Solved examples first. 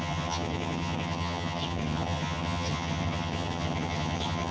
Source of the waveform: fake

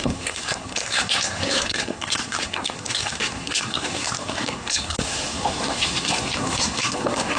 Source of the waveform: fake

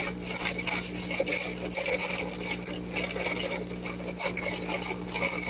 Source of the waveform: real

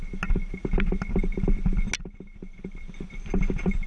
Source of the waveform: real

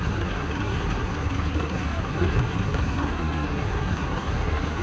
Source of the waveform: fake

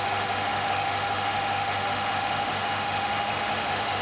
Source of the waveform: fake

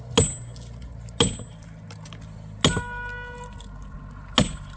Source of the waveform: real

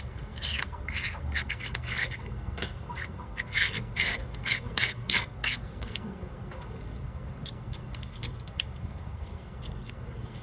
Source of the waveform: fake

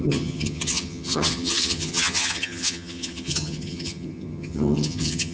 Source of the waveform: fake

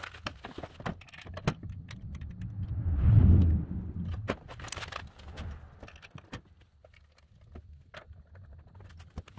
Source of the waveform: real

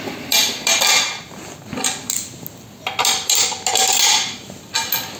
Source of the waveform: real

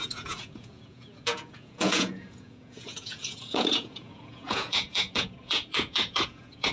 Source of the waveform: fake